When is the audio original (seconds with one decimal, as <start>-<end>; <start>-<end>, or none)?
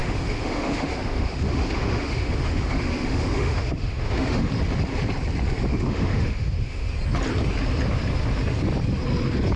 4.5-5.7; 6.9-9.6